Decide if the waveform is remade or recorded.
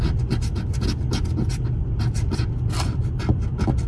recorded